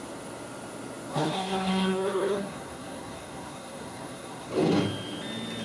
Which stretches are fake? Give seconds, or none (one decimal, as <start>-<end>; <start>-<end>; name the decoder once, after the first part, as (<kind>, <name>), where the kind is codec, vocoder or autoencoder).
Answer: 1.1-4.5 (codec, SNAC)